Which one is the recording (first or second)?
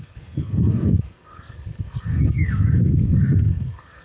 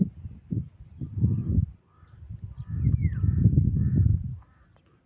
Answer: second